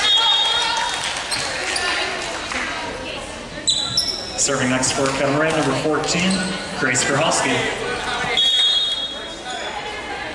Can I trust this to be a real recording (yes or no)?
yes